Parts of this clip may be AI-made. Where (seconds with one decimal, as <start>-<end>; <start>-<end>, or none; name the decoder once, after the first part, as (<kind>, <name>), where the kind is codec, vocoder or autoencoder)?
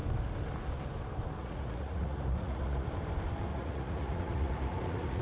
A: 1.4-2.9 (vocoder, Vocos); 3.5-5.2